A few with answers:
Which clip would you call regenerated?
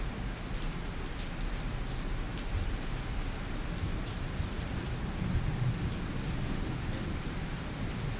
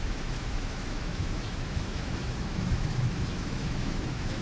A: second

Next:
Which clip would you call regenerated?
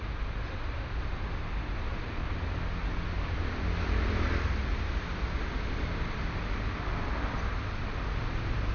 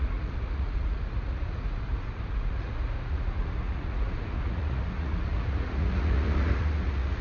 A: second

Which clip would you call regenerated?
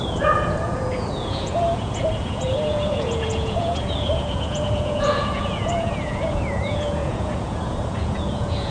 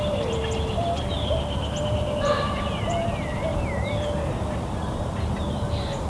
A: first